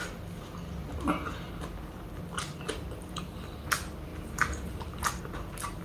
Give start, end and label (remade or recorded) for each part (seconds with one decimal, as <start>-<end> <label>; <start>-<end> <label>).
0.0-5.8 recorded